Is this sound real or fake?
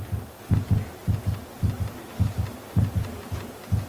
real